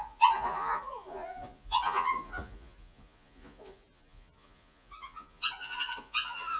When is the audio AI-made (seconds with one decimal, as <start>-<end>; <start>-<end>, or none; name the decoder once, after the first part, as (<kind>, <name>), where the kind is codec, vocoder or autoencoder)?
0.0-6.6 (vocoder, Vocos)